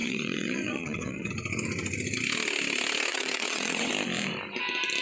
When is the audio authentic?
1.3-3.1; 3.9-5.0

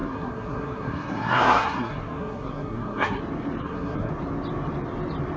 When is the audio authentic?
3.2-3.6; 4.1-5.4